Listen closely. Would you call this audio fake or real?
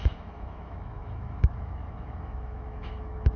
fake